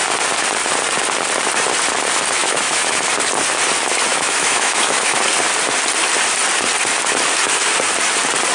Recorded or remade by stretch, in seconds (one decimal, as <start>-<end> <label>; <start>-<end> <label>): 0.0-2.4 recorded; 2.4-3.0 remade; 3.0-4.1 recorded; 4.1-5.2 remade; 5.2-8.5 recorded